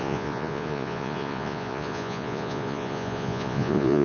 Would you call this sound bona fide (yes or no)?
no